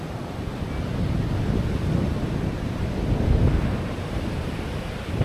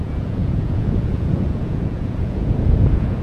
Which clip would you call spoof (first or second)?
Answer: second